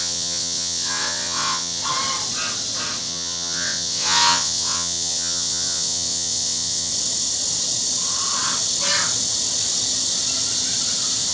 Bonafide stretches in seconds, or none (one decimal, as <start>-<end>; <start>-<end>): 1.8-3.0; 6.9-11.3